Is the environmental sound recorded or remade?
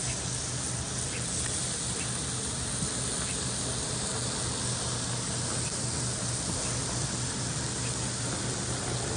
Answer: recorded